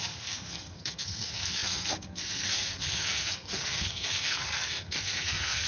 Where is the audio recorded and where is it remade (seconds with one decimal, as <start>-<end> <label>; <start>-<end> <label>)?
0.0-5.7 remade